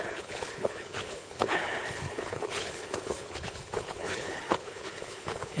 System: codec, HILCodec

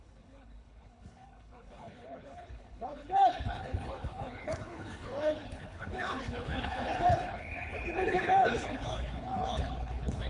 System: codec, HILCodec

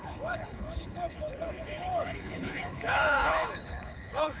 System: codec, HILCodec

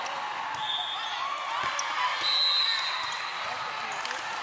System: none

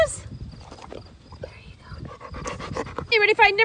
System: none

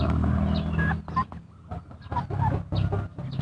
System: none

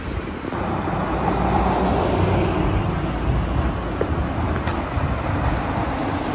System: none